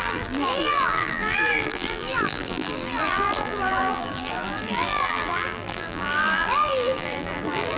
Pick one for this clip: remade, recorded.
remade